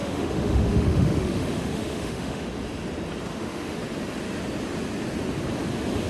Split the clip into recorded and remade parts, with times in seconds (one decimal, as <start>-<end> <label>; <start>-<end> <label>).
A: 0.0-2.6 remade; 2.6-3.3 recorded; 3.3-3.8 remade; 3.8-6.1 recorded